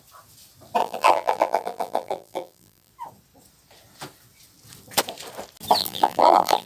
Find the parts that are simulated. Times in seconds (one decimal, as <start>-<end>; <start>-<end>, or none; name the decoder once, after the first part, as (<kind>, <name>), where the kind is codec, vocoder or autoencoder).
0.8-2.9 (vocoder, BigVGAN v2); 5.8-6.7